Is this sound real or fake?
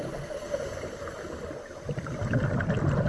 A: fake